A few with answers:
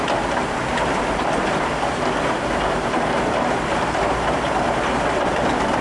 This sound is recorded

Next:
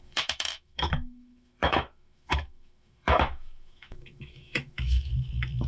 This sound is remade